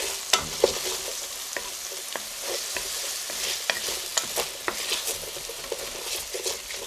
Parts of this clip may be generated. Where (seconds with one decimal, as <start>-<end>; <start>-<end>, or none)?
none